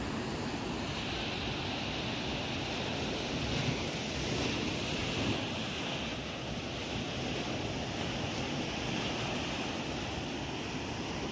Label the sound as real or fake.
real